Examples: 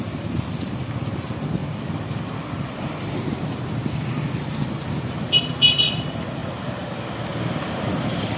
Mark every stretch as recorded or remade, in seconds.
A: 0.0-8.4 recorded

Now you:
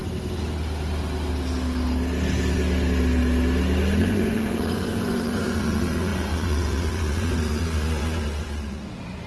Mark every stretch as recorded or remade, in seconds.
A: 0.0-4.0 recorded; 4.0-9.3 remade

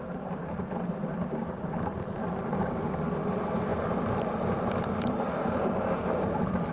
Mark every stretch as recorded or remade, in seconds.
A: 0.0-6.7 recorded

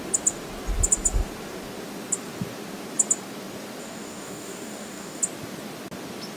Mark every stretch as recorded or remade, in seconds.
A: 0.0-3.8 recorded; 3.8-5.2 remade; 5.2-6.4 recorded

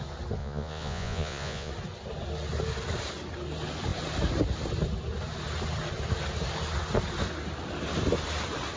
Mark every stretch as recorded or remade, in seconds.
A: 0.0-0.4 recorded; 0.4-1.7 remade; 1.7-8.8 recorded